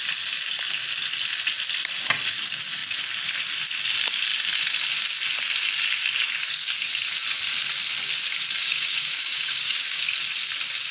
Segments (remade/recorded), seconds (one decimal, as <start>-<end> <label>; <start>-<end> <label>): 0.0-8.6 recorded; 8.6-10.1 remade; 10.1-10.9 recorded